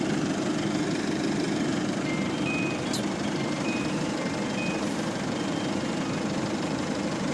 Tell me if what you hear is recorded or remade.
recorded